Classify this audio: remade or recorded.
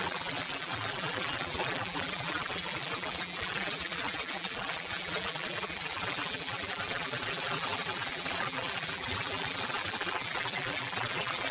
remade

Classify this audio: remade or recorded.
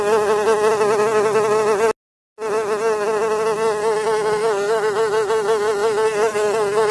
recorded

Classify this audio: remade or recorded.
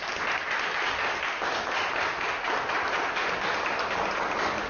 recorded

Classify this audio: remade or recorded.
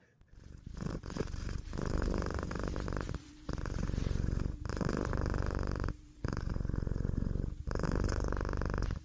remade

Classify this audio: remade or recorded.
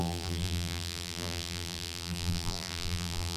remade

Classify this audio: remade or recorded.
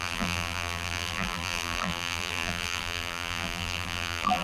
remade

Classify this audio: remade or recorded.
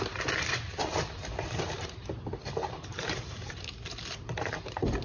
remade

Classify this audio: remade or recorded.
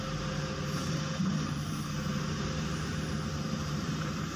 remade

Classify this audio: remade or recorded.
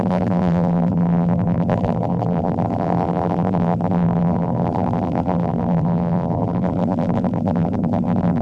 remade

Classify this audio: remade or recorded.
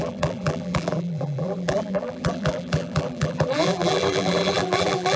remade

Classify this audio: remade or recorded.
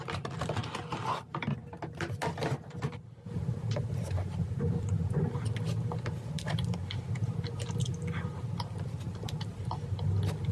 recorded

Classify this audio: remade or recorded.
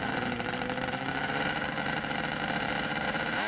remade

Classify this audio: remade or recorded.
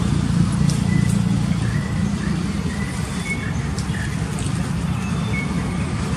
recorded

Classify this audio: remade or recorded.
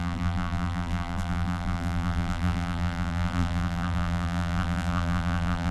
remade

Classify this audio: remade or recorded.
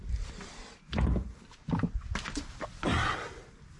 recorded